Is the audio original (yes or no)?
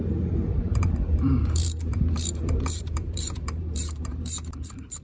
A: no